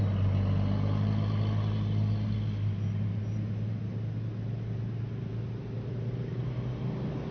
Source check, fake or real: real